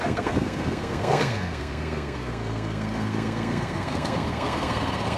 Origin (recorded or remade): remade